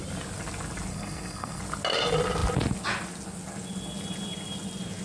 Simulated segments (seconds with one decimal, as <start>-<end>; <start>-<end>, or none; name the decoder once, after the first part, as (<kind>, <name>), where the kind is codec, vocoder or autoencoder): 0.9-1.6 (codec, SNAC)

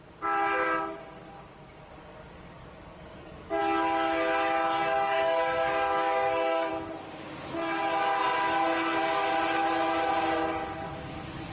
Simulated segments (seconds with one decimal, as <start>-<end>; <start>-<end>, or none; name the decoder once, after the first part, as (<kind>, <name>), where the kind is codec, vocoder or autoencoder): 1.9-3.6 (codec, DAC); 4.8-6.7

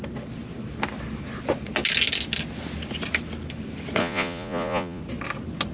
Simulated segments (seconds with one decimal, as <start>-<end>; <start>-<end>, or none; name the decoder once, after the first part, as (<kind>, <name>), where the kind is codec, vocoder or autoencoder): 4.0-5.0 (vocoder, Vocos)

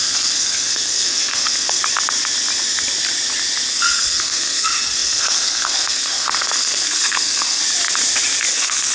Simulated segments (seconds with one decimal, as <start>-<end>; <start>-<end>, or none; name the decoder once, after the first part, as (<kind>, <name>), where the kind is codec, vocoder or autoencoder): 0.0-1.8 (codec, SNAC); 3.7-7.6; 8.5-8.9

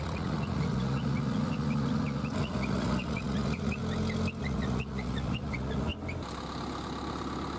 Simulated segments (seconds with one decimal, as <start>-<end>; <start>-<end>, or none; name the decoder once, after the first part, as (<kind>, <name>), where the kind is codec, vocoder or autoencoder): 0.0-3.8 (vocoder, Vocos); 4.4-5.9

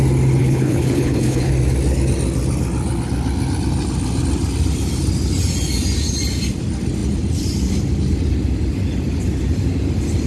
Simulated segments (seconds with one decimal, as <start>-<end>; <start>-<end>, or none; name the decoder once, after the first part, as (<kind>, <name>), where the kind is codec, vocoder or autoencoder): 0.4-1.5 (codec, HILCodec)